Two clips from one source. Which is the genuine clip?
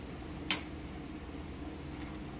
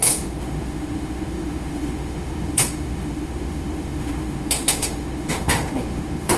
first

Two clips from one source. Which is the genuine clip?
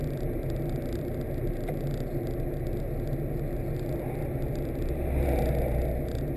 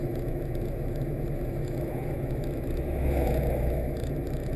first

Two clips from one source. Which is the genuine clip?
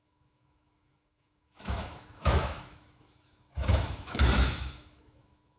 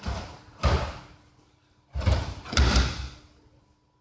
second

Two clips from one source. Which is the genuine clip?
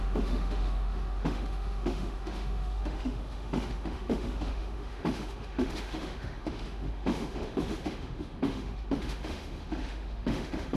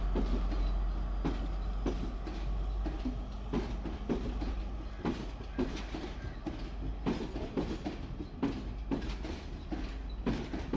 second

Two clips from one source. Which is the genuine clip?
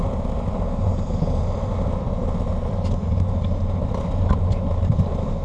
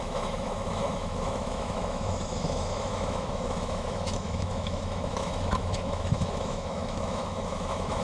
first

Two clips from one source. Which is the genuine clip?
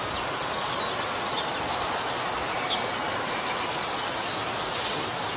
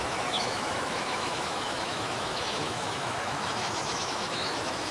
first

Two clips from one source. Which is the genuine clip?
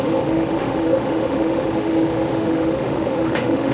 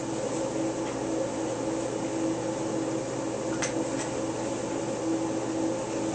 second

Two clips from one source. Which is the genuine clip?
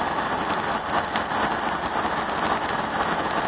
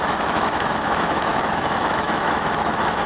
first